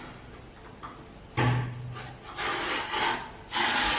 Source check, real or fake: real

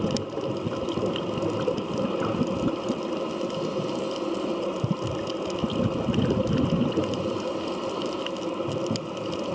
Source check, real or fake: real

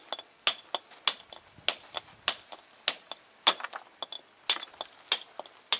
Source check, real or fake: real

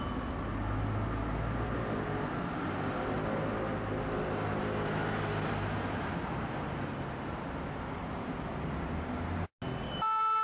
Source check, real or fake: real